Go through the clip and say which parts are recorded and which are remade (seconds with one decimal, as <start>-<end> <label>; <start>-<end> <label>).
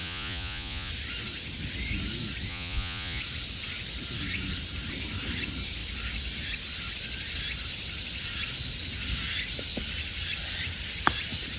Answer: 0.0-0.9 remade; 0.9-2.5 recorded; 2.5-3.2 remade; 3.2-11.6 recorded